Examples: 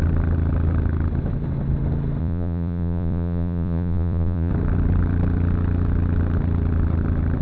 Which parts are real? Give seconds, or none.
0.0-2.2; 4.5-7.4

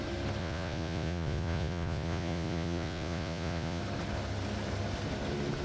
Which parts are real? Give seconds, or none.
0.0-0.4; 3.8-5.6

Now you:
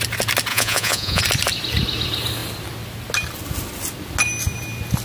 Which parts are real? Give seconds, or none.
0.0-0.5; 1.2-5.0